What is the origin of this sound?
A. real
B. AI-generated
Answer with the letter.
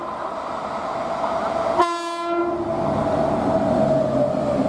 A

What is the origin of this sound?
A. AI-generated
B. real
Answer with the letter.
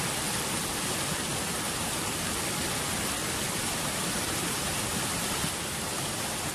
B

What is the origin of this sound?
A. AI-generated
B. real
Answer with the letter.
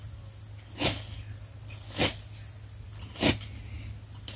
B